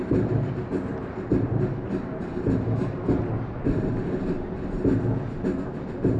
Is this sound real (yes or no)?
yes